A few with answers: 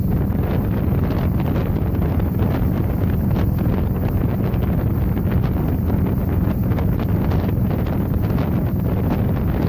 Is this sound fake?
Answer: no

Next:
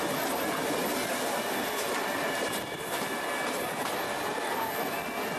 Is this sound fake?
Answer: no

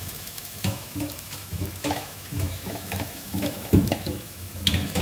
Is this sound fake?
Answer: yes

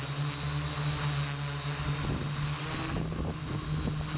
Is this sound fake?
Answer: no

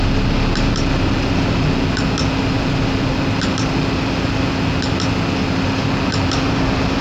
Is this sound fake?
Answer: no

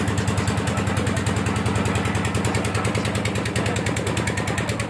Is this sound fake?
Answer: no